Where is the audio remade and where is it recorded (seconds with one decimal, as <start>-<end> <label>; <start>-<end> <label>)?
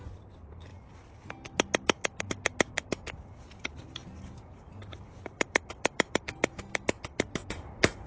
0.0-2.7 recorded; 2.7-6.2 remade; 6.2-8.1 recorded